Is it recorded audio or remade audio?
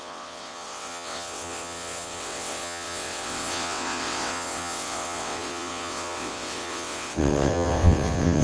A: remade